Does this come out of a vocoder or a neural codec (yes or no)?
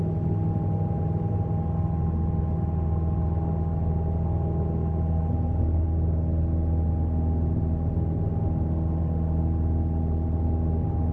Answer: no